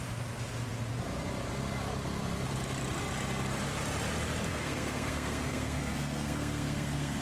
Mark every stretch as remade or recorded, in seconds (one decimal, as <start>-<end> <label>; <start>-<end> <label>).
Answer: 0.0-4.5 recorded; 4.5-7.2 remade